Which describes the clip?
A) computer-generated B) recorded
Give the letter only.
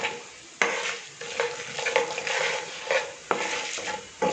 B